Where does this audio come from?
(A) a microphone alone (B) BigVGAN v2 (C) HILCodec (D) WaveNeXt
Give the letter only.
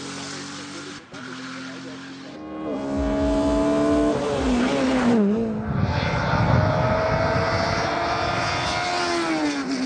A